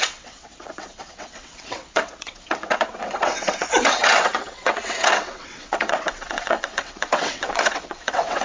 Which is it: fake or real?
fake